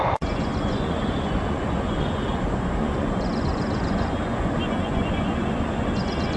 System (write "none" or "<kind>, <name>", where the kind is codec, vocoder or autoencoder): vocoder, Vocos